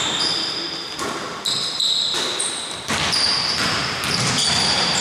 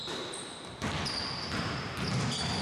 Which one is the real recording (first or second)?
second